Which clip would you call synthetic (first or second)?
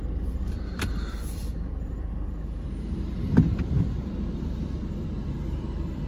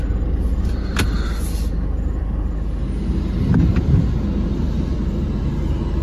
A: first